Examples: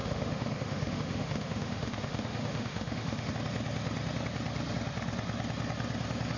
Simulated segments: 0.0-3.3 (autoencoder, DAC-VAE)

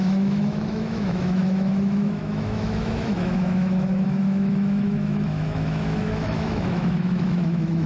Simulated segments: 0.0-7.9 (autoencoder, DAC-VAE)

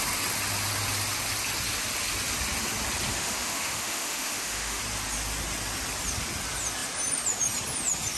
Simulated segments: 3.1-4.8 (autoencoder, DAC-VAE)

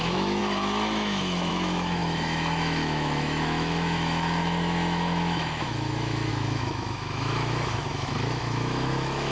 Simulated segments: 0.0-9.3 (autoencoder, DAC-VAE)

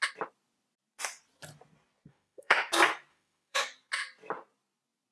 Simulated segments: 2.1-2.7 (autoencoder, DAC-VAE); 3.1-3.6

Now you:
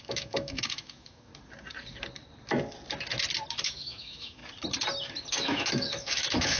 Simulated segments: 0.0-1.3 (autoencoder, DAC-VAE); 3.5-4.4; 5.3-6.6

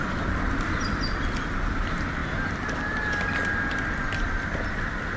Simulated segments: none

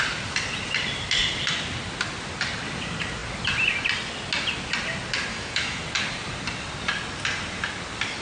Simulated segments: 5.3-5.8 (autoencoder, DAC-VAE)